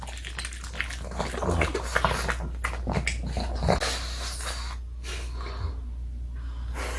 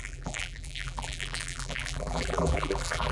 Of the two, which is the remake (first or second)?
second